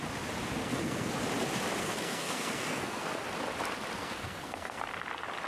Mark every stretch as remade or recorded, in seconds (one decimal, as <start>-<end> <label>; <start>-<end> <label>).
0.0-0.6 recorded; 0.6-1.1 remade; 1.1-1.8 recorded; 1.8-3.1 remade; 3.1-4.0 recorded; 4.0-4.8 remade; 4.8-5.5 recorded